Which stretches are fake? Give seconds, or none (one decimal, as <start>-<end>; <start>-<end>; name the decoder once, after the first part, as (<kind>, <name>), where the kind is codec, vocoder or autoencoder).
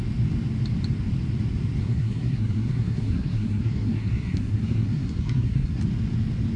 1.8-5.8 (codec, SNAC)